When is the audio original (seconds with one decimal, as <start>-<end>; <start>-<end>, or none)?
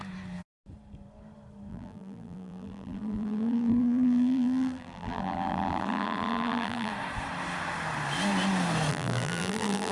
0.0-1.7; 6.9-8.9